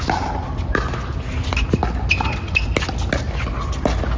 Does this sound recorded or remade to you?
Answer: recorded